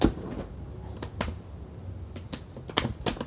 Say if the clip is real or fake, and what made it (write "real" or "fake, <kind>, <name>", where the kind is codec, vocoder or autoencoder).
real